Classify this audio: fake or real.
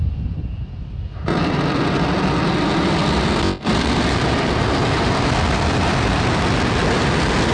real